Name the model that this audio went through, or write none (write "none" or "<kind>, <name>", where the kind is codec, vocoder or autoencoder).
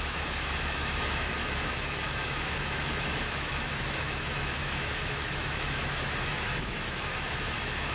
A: autoencoder, DAC-VAE